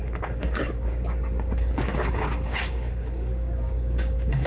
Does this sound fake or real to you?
fake